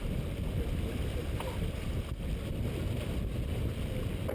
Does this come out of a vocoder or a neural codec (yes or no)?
no